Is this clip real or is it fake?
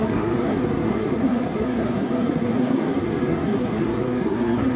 fake